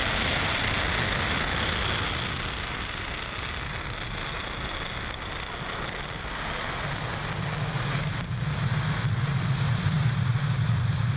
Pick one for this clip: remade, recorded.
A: recorded